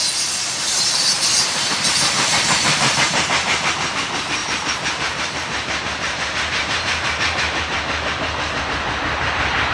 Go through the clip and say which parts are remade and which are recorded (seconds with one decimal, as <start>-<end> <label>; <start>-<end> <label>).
0.0-3.7 remade; 3.7-4.4 recorded; 4.4-8.6 remade; 8.6-9.7 recorded